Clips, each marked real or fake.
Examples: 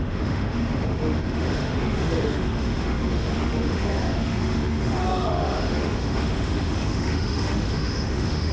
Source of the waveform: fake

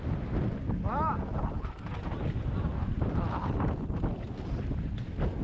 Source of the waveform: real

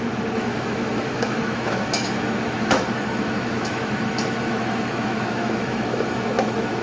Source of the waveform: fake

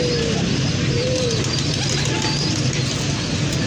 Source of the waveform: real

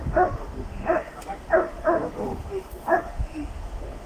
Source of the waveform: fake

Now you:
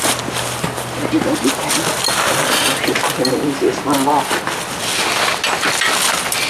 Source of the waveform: real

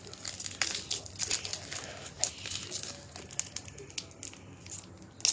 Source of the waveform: real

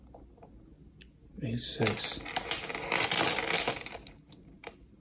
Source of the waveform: real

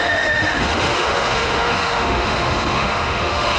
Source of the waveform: fake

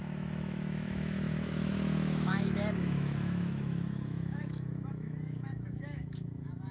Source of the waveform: fake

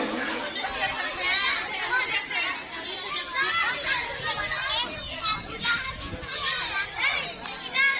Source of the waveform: real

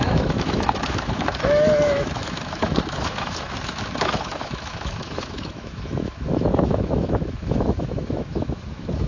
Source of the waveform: fake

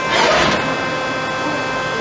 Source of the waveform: real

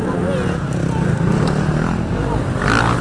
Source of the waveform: real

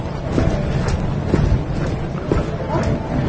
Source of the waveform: real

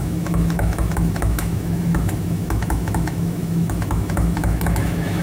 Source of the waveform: fake